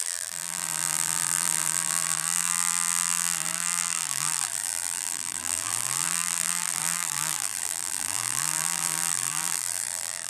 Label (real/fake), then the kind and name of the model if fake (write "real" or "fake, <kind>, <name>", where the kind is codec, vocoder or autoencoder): fake, vocoder, BigVGAN v2